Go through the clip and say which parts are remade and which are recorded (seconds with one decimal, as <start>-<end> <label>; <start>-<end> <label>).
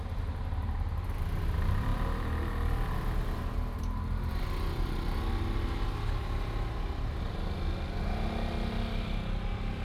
0.0-9.8 recorded